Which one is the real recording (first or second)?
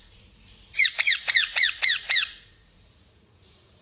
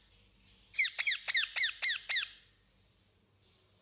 second